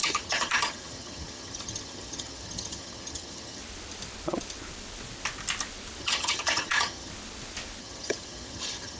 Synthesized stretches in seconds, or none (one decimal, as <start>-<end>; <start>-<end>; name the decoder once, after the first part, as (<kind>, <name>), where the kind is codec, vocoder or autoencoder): 0.0-3.6 (vocoder, HiFi-GAN); 6.0-7.1; 7.8-9.0